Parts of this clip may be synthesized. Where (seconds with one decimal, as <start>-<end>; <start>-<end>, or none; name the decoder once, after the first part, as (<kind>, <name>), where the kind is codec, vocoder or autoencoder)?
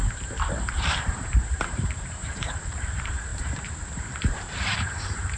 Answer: 0.9-5.4 (vocoder, BigVGAN v2)